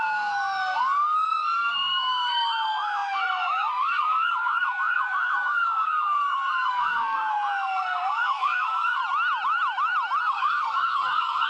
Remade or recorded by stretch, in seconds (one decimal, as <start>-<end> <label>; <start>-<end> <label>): 0.0-9.0 remade; 9.0-10.2 recorded; 10.2-11.5 remade